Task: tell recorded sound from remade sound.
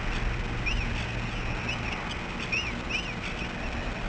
recorded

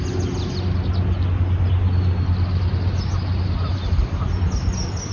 recorded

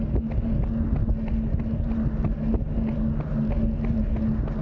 recorded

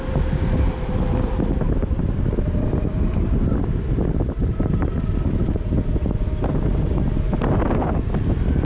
recorded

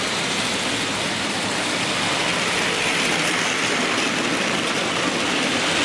recorded